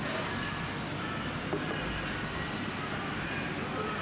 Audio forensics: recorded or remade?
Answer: recorded